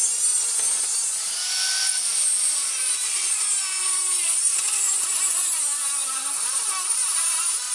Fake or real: real